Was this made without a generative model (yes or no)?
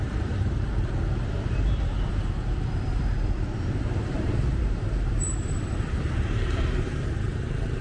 no